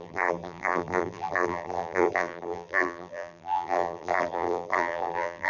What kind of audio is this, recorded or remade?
remade